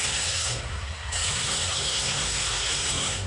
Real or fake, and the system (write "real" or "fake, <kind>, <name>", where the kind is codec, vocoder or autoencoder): fake, codec, SNAC